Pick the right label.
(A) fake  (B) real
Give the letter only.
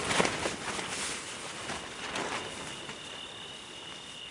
B